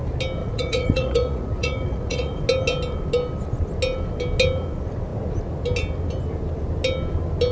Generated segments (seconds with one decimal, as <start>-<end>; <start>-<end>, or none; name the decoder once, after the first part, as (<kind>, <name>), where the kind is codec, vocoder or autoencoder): 0.4-2.4 (vocoder, Vocos)